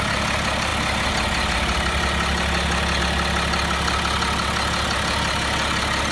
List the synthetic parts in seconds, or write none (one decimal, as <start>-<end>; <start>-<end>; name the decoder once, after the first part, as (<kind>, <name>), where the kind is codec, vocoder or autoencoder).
none

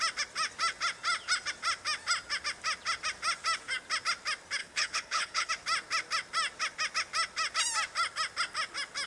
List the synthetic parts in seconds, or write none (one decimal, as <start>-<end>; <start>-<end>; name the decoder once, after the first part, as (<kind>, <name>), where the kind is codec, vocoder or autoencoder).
4.6-5.5 (codec, HILCodec)

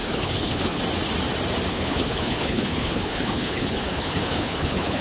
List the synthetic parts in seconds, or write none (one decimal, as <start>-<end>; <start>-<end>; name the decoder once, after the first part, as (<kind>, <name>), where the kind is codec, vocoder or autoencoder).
0.0-0.8 (codec, HILCodec); 1.7-5.0

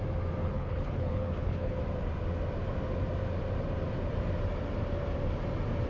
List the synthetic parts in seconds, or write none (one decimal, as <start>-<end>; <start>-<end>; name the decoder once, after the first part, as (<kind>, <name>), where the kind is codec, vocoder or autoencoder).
0.4-1.8 (codec, HILCodec)